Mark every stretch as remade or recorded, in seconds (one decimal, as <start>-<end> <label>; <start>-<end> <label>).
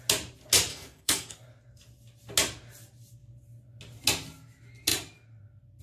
0.0-0.7 recorded; 0.7-1.3 remade; 1.3-5.8 recorded